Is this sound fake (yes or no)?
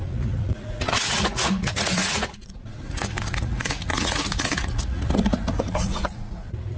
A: yes